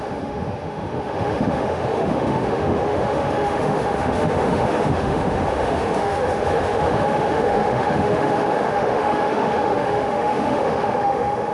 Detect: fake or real fake